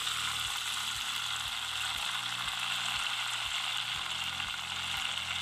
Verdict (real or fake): real